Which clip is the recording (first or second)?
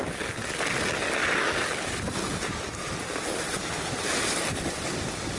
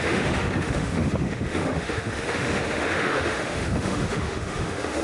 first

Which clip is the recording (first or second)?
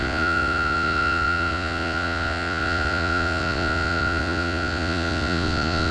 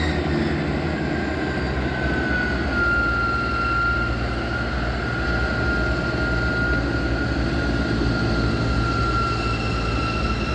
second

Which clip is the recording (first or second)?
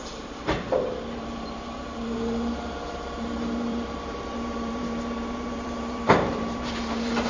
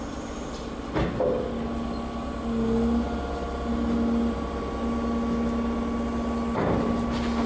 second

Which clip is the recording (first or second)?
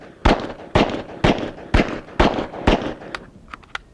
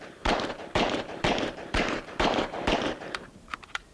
first